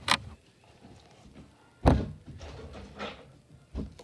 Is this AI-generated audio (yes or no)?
no